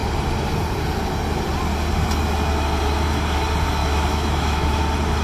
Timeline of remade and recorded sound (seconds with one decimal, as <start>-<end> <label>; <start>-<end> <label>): 0.0-3.8 recorded; 3.8-4.8 remade; 4.8-5.2 recorded

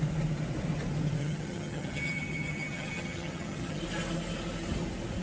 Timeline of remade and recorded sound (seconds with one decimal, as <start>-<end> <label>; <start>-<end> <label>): 0.0-1.2 recorded; 1.2-3.8 remade; 3.8-5.2 recorded

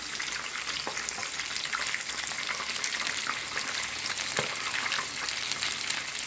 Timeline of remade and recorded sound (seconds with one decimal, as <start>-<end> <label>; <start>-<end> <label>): 0.0-6.3 recorded

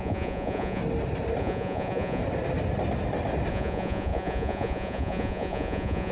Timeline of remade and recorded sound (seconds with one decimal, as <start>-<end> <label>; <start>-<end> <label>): 0.0-0.8 remade; 0.8-1.4 recorded; 1.4-2.2 remade; 2.2-3.5 recorded; 3.5-6.1 remade

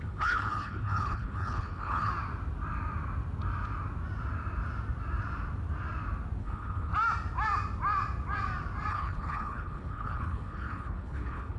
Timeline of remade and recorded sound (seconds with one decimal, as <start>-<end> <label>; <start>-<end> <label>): 0.0-2.1 remade; 2.1-6.4 recorded; 6.4-6.9 remade; 6.9-8.9 recorded; 8.9-11.6 remade

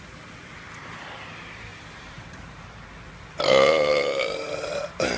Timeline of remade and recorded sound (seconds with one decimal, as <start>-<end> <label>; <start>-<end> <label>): 0.0-1.7 recorded; 1.7-2.8 remade; 2.8-5.2 recorded